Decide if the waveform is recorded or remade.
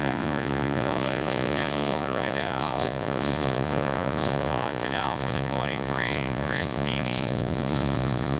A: remade